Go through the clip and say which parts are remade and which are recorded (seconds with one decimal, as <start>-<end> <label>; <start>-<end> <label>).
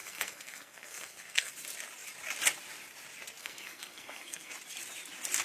0.0-1.5 remade; 1.5-3.4 recorded; 3.4-4.5 remade; 4.5-5.4 recorded